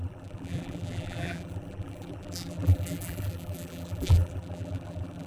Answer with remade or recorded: remade